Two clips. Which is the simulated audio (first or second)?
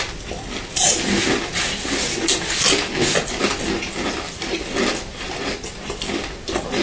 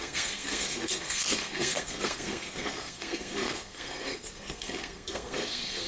second